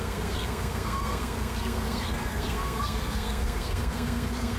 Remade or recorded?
remade